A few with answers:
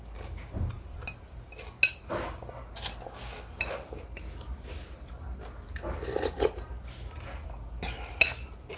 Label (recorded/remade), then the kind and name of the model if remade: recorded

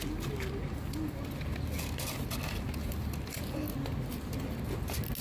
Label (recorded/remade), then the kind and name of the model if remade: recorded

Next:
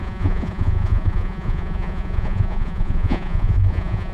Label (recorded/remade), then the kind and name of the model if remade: remade, vocoder, Vocos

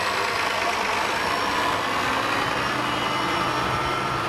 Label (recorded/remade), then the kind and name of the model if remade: recorded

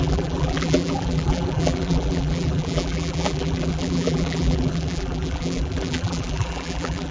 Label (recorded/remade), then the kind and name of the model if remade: remade, vocoder, BigVGAN v2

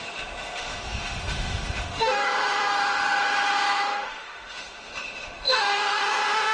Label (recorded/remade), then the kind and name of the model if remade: remade, autoencoder, DAC-VAE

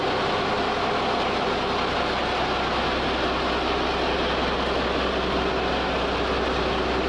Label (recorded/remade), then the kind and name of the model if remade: recorded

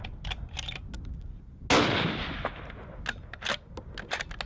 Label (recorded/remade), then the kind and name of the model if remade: recorded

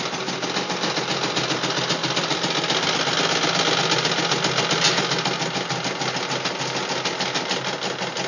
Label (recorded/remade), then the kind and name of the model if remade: recorded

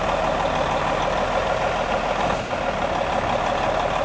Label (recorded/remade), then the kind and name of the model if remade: recorded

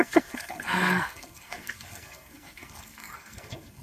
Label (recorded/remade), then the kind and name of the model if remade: remade, codec, SNAC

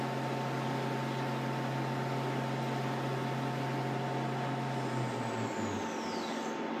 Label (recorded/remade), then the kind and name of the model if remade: recorded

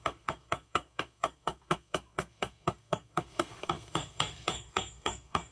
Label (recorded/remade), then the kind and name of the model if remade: remade, codec, SNAC